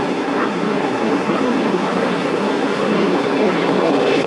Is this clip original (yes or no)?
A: no